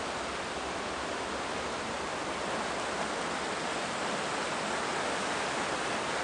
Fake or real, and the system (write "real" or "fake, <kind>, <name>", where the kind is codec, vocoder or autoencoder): real